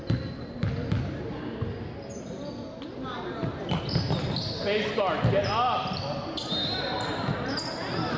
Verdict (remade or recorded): recorded